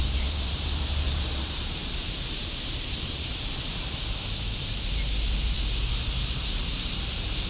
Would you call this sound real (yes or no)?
no